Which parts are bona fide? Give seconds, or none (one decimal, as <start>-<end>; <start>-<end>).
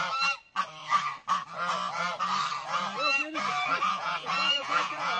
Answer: 0.0-3.9